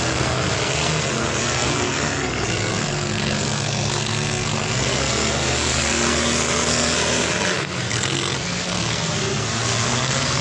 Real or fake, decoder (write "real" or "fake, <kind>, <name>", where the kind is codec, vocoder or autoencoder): fake, codec, SNAC